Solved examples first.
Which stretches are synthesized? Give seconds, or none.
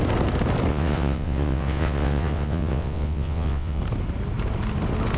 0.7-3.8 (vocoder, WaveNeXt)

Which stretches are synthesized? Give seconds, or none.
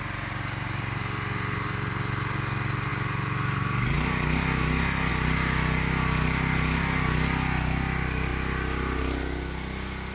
none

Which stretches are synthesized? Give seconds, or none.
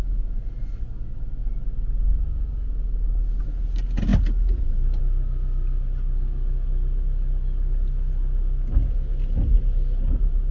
none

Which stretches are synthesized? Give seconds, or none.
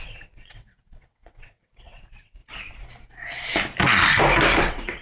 0.0-2.4 (vocoder, WaveNeXt); 4.6-5.0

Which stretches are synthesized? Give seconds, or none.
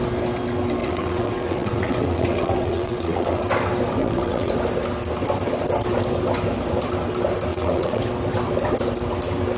0.8-3.4 (vocoder, WaveNeXt); 4.0-4.5; 7.5-8.0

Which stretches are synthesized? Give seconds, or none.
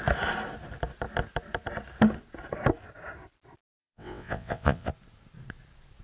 3.8-4.9 (vocoder, WaveNeXt)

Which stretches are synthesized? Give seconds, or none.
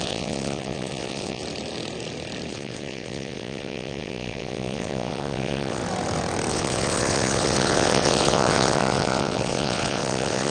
0.0-1.4 (vocoder, WaveNeXt); 2.5-5.8; 6.5-10.5